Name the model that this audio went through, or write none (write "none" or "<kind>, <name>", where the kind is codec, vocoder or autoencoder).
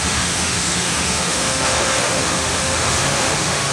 autoencoder, DAC-VAE